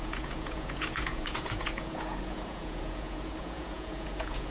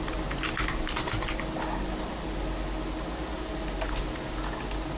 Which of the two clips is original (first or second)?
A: second